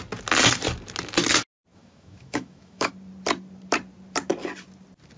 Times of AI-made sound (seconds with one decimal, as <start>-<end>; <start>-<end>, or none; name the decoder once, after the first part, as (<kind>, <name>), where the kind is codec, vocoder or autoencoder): 1.7-2.9 (autoencoder, DAC-VAE)